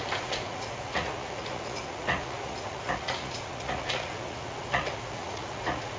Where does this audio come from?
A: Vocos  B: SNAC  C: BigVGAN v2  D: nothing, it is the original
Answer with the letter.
A